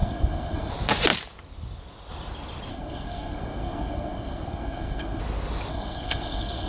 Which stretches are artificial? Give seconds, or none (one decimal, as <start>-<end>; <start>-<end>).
0.0-0.7; 2.7-5.2; 5.7-6.7